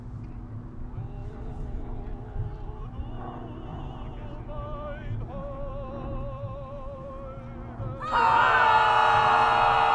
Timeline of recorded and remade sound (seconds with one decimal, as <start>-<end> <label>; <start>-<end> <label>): 0.0-1.2 recorded; 1.2-3.0 remade; 3.0-3.7 recorded; 3.7-7.1 remade; 7.1-9.9 recorded